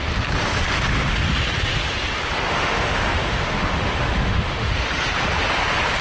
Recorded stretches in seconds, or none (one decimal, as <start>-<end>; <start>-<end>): 0.0-2.5; 4.7-6.0